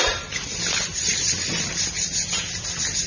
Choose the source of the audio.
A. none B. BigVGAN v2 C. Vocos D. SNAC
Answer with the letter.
A